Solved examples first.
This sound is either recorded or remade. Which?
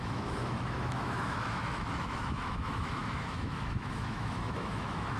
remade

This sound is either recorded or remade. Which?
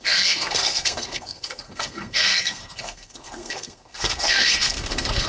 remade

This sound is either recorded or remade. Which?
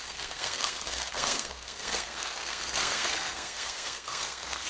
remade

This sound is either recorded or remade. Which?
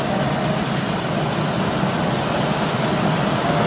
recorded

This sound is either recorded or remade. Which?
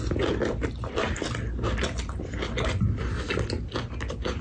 recorded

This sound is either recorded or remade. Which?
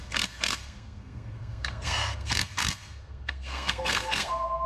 remade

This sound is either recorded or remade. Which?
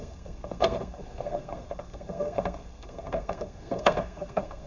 remade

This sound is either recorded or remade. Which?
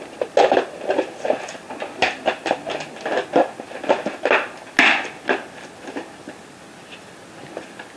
recorded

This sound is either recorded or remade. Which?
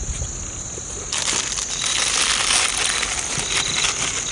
recorded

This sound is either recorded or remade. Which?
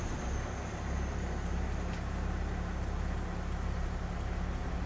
recorded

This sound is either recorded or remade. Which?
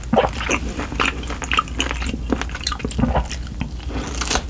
recorded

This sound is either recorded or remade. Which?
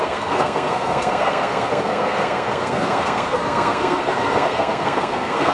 remade